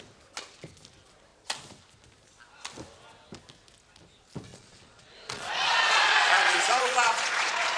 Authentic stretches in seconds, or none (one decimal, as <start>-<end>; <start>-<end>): 0.0-4.5